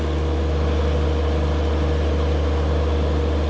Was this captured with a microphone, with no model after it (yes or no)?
yes